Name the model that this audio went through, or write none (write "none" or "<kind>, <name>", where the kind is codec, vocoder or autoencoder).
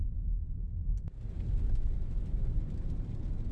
none